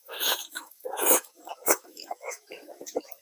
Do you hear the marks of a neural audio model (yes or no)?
yes